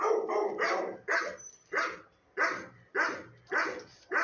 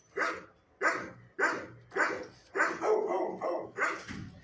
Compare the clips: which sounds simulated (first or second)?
first